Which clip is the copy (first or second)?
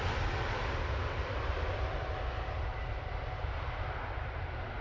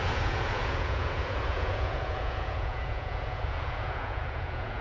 second